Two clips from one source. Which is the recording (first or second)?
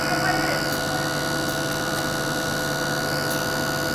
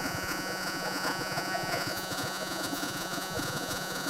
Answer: first